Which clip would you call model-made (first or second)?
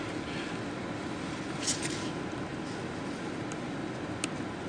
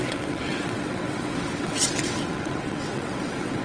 second